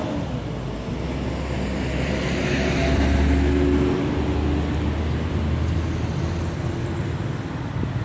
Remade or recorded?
recorded